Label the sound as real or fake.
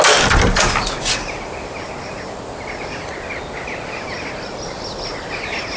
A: real